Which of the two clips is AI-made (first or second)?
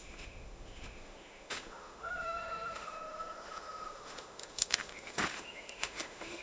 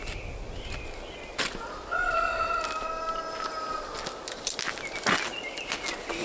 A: first